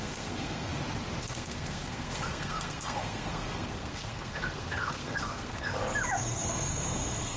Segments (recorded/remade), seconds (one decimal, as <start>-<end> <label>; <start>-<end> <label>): 0.0-0.7 remade; 0.7-1.2 recorded; 1.2-5.7 remade; 5.7-6.2 recorded; 6.2-7.4 remade